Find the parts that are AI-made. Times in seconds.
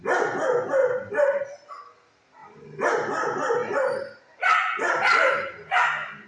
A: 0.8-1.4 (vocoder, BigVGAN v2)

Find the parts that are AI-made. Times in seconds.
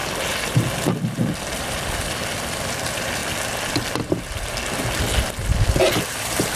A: 1.5-3.2 (vocoder, BigVGAN v2); 6.0-6.6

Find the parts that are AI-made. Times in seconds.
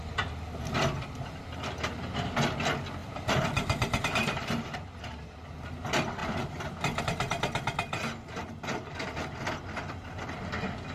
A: 3.0-5.0 (vocoder, BigVGAN v2)